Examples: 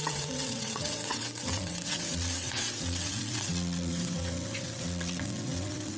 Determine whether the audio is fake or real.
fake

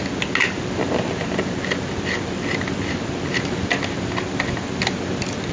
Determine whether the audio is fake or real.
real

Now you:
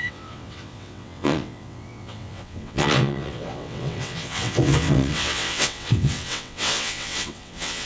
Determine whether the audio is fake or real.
fake